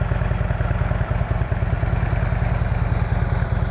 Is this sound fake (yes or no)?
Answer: no